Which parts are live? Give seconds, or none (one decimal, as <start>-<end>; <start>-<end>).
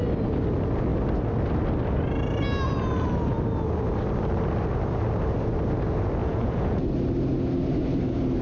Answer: 0.0-6.2; 6.8-8.4